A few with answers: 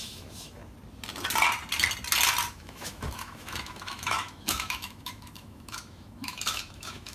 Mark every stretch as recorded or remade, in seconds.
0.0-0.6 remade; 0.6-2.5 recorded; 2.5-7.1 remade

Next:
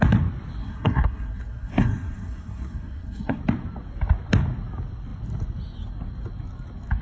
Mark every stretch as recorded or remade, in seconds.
0.0-0.6 recorded; 0.6-3.4 remade; 3.4-7.0 recorded

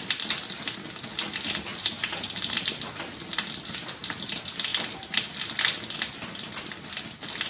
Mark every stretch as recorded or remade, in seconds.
0.0-1.7 recorded; 1.7-2.8 remade; 2.8-7.5 recorded

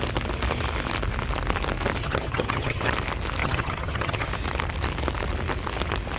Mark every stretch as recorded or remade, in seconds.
0.0-2.0 recorded; 2.0-2.9 remade; 2.9-3.4 recorded; 3.4-4.3 remade; 4.3-6.2 recorded

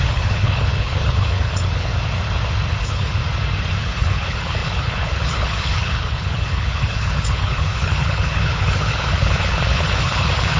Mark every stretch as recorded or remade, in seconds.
0.0-1.9 remade; 1.9-2.8 recorded; 2.8-3.2 remade; 3.2-3.8 recorded; 3.8-10.6 remade

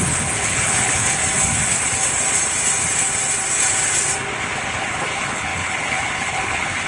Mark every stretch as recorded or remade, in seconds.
0.0-1.2 remade; 1.2-4.8 recorded; 4.8-6.9 remade